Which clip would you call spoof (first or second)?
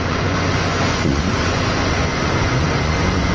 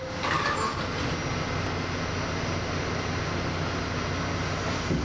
first